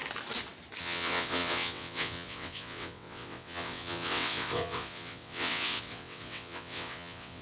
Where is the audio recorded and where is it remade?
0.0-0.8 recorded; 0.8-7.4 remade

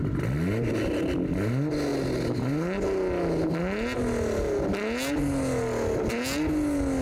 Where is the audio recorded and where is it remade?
0.0-7.0 recorded

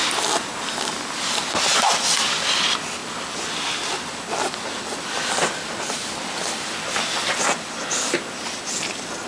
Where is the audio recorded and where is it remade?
0.0-9.3 recorded

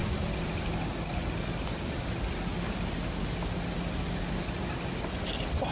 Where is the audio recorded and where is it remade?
0.0-5.7 recorded

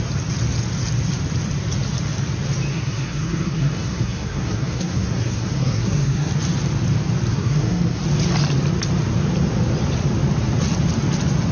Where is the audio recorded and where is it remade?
0.0-2.7 recorded; 2.7-6.3 remade; 6.3-7.3 recorded; 7.3-8.0 remade; 8.0-11.5 recorded

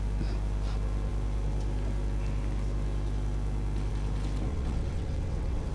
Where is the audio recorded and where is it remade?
0.0-4.5 recorded; 4.5-5.7 remade

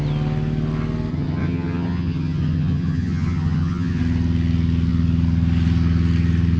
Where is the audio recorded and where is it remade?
0.0-1.1 recorded; 1.1-4.0 remade; 4.0-6.6 recorded

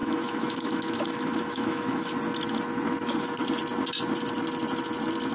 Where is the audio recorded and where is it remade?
0.0-2.1 remade; 2.1-5.3 recorded